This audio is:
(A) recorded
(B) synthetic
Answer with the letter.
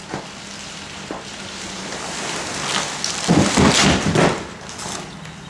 A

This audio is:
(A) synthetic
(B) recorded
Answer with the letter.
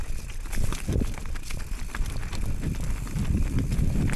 B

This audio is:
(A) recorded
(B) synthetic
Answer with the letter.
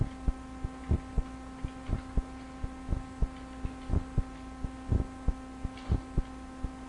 A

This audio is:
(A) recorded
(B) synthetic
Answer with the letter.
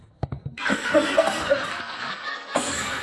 B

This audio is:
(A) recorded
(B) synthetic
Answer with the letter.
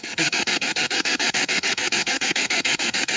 B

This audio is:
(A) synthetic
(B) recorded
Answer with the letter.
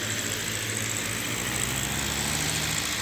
B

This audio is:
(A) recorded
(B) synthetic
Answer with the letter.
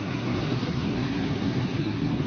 B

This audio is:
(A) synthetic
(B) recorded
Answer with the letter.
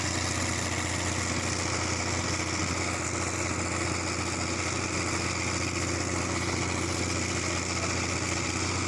B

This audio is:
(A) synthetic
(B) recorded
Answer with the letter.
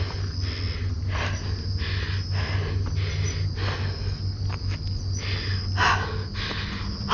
B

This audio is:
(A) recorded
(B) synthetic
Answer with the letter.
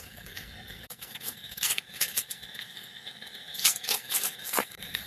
B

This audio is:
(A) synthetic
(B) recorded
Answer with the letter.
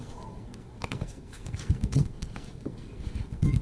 A